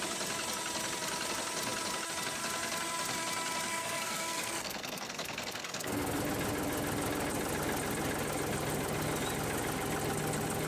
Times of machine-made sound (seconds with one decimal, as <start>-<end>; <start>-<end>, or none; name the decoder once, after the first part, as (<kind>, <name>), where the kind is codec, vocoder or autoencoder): 3.7-6.2 (codec, SNAC)